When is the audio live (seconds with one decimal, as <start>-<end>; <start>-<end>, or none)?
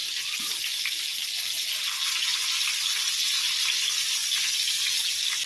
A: 0.0-5.5